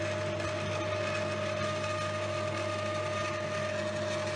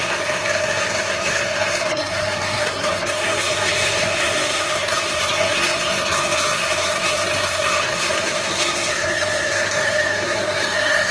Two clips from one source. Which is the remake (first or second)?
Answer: second